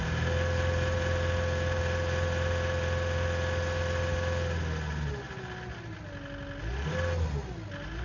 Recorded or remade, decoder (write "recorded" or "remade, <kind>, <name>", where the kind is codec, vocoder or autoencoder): recorded